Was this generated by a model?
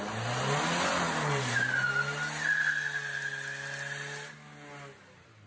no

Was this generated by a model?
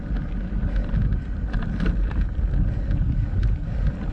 no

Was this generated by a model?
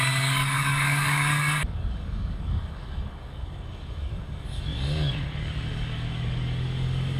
yes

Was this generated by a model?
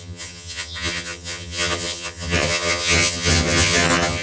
yes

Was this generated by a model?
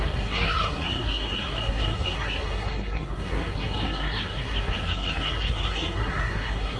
yes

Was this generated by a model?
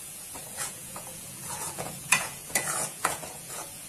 yes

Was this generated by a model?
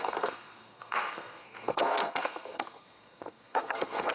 yes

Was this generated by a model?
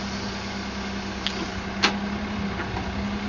no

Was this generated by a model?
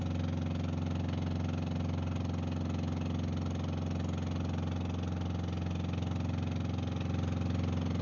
no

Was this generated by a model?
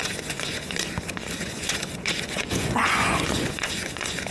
yes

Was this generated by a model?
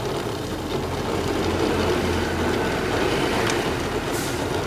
no